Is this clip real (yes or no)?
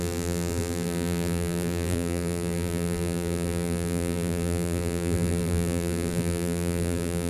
no